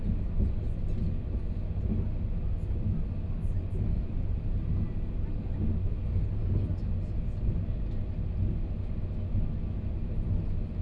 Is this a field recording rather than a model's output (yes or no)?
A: yes